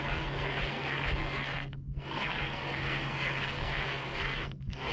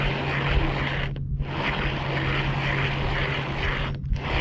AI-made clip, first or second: first